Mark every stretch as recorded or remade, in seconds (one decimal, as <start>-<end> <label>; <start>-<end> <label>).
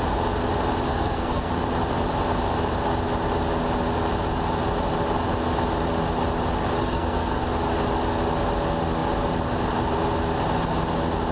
0.0-0.9 recorded; 0.9-1.5 remade; 1.5-6.8 recorded; 6.8-7.4 remade; 7.4-11.3 recorded